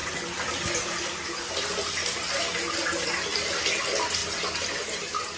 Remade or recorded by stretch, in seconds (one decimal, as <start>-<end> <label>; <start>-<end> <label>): 0.0-5.4 recorded